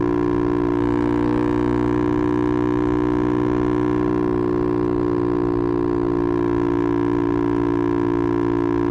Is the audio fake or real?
real